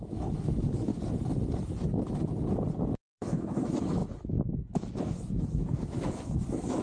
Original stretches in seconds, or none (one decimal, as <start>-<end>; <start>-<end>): 0.9-2.9